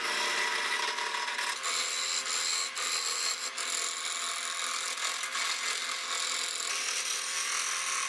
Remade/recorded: recorded